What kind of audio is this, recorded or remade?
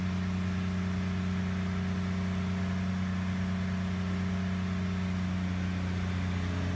recorded